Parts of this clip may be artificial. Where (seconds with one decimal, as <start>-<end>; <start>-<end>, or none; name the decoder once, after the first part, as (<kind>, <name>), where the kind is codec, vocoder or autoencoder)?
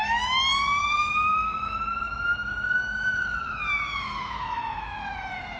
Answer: 0.0-5.6 (autoencoder, DAC-VAE)